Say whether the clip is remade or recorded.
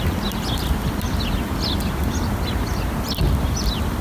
recorded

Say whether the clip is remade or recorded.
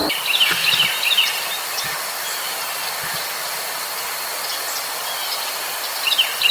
recorded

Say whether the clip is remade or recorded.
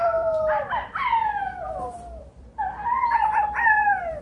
remade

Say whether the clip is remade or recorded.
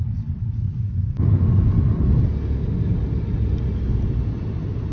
recorded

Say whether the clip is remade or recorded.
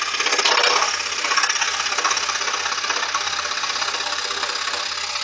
recorded